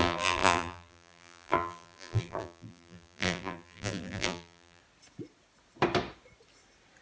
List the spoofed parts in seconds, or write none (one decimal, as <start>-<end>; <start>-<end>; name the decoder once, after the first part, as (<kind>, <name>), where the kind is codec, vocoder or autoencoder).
0.0-4.8 (vocoder, BigVGAN v2)